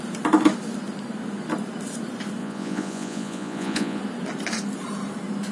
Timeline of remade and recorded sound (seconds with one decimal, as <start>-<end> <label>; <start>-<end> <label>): 0.0-2.4 recorded; 2.4-4.0 remade; 4.0-5.5 recorded